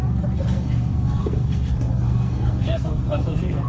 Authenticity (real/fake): fake